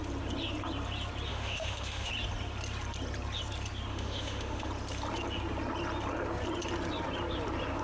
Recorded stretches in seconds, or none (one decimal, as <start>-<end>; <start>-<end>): 0.0-1.3; 2.1-3.9; 4.7-7.8